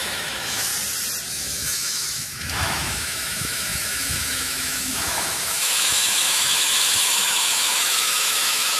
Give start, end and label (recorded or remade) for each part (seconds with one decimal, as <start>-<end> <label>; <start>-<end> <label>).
0.0-0.7 remade; 0.7-1.3 recorded; 1.3-8.8 remade